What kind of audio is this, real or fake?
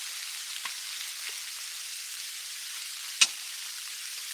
real